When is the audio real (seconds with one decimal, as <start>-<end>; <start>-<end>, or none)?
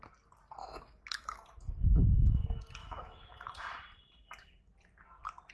0.0-0.6; 1.7-2.8; 3.5-5.5